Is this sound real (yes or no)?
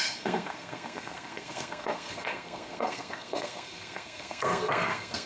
no